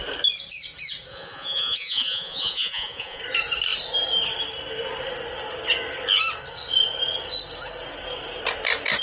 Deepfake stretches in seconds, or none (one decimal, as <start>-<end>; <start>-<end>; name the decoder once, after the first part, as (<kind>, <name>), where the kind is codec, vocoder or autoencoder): 1.1-3.2 (vocoder, Vocos)